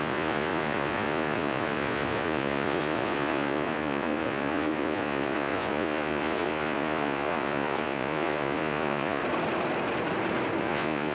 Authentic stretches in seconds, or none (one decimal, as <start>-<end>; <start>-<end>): 9.2-10.6